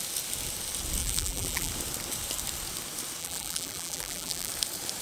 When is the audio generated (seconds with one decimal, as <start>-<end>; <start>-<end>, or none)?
1.0-1.7; 3.2-4.5